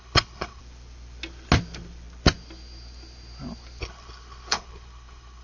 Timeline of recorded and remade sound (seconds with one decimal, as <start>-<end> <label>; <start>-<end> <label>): 0.0-0.6 remade; 0.6-3.8 recorded; 3.8-5.4 remade